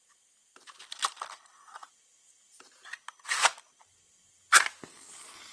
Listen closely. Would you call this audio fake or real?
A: real